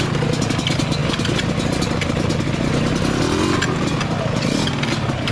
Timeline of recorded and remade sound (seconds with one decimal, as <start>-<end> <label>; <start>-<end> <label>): 0.0-5.3 recorded